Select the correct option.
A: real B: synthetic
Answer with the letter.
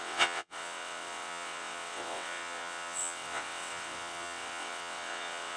B